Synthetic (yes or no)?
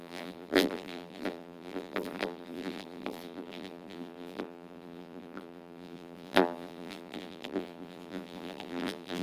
yes